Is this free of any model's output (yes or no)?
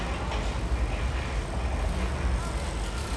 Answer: yes